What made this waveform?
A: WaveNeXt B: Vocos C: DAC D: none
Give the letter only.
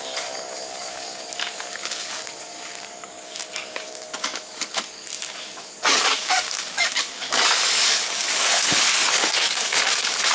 C